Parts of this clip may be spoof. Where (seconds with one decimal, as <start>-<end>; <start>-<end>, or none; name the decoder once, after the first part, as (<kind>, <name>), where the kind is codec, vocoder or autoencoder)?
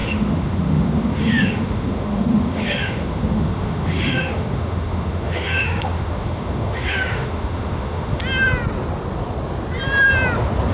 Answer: 0.0-8.2 (autoencoder, DAC-VAE)